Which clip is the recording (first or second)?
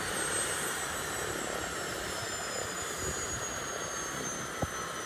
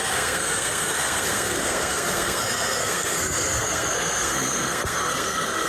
first